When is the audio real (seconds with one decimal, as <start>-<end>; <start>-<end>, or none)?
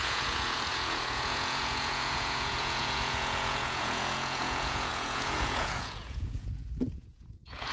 none